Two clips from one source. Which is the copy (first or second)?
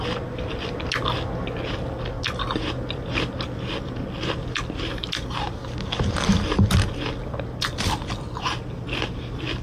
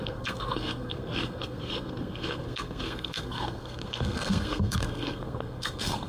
second